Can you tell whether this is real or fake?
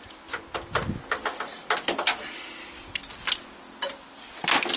real